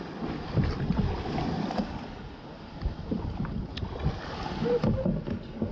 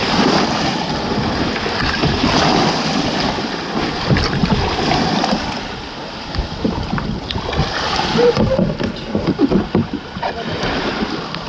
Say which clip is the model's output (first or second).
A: second